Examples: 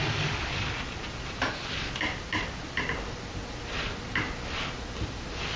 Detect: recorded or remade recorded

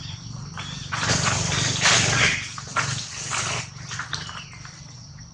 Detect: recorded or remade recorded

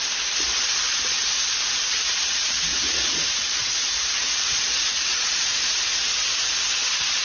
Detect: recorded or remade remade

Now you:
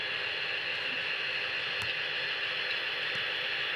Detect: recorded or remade recorded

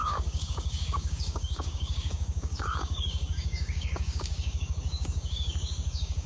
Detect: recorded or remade remade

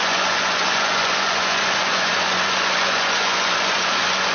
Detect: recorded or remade remade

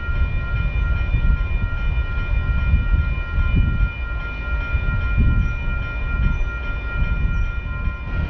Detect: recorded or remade recorded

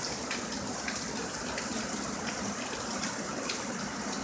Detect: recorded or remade remade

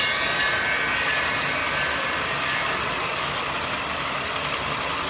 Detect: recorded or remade recorded